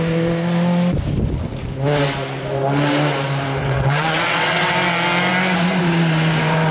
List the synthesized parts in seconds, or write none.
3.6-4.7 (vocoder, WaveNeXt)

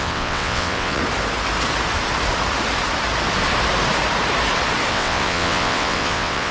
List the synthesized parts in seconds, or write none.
0.0-1.0 (vocoder, WaveNeXt); 4.9-6.5

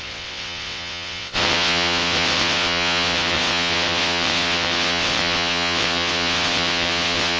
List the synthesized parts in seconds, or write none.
0.0-7.4 (vocoder, WaveNeXt)

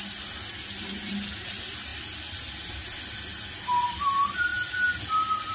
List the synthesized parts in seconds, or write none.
none

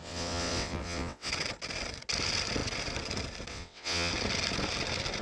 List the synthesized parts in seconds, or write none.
0.0-1.3 (vocoder, WaveNeXt); 3.5-4.1

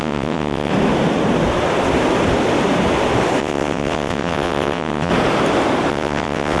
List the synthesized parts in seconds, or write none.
0.0-0.7 (vocoder, WaveNeXt); 3.4-5.1; 5.9-6.6

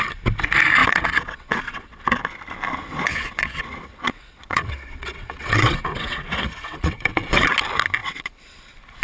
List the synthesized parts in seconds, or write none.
0.8-2.0 (vocoder, WaveNeXt); 2.9-7.5; 8.0-8.6

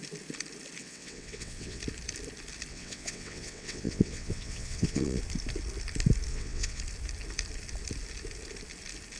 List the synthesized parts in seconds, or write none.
0.8-1.8 (vocoder, WaveNeXt); 2.7-5.2; 6.3-6.8